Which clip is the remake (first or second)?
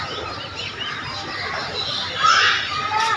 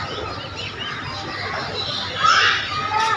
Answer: first